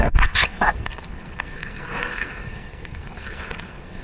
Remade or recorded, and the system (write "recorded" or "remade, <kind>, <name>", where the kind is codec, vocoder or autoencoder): remade, codec, SNAC